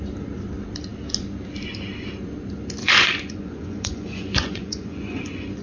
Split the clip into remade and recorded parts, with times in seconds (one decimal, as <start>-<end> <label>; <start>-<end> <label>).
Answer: 0.0-2.8 recorded; 2.8-5.6 remade